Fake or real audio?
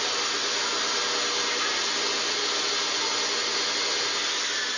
real